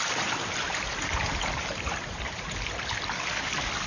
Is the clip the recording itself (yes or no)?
yes